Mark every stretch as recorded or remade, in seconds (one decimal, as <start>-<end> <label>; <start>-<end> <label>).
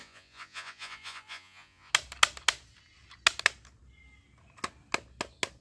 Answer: 0.0-1.9 remade; 1.9-5.6 recorded